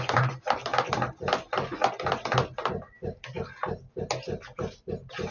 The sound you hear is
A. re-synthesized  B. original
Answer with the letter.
B